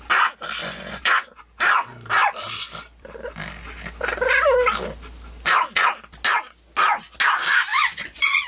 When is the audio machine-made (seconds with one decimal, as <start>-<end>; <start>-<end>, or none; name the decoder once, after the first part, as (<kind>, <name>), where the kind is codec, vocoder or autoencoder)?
0.6-1.4 (vocoder, Vocos); 7.7-8.5